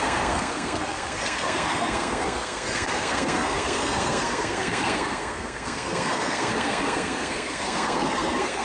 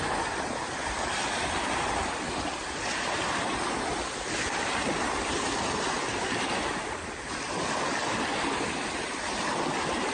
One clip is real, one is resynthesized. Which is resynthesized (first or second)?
first